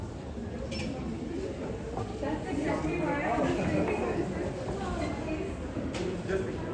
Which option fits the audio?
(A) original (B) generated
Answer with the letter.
A